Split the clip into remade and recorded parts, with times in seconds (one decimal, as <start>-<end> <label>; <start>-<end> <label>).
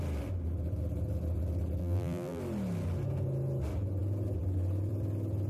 0.0-1.8 recorded; 1.8-2.4 remade; 2.4-5.5 recorded